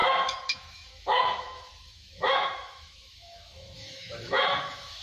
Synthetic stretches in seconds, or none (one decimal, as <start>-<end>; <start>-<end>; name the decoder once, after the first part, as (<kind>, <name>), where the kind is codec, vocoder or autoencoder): 0.0-5.0 (autoencoder, DAC-VAE)